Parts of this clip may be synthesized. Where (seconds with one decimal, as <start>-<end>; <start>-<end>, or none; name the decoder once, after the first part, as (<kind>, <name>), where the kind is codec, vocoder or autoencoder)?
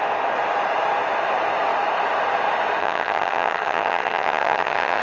2.8-5.0 (vocoder, HiFi-GAN)